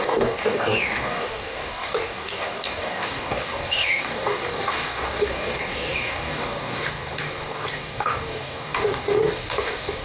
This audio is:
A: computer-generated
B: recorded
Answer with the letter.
A